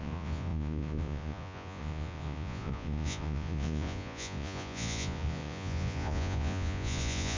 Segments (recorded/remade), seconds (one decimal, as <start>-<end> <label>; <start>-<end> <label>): 0.0-7.4 remade